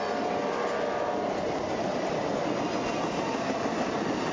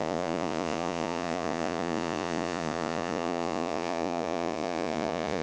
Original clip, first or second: first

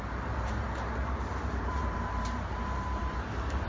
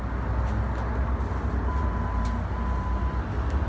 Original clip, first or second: second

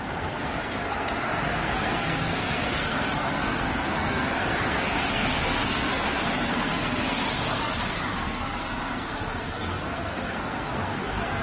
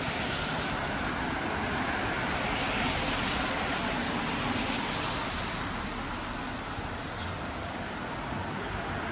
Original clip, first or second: second